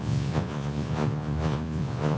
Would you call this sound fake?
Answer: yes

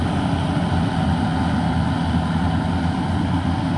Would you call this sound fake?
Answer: no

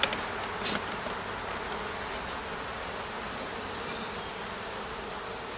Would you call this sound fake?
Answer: no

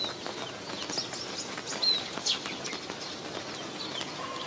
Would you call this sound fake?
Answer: no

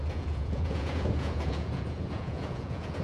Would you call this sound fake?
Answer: yes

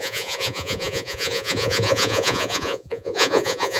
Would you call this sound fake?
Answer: yes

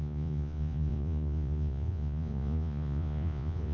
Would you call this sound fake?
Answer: yes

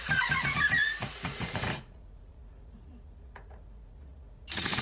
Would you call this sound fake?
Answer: yes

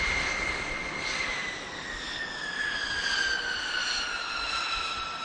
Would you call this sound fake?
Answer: no